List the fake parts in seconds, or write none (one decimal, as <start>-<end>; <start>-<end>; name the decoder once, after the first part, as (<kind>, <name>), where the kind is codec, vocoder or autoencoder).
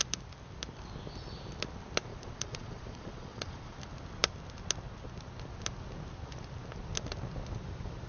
2.1-3.7 (vocoder, Vocos)